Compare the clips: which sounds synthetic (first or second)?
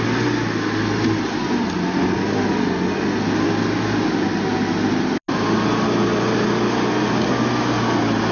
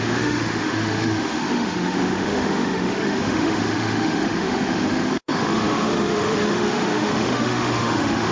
second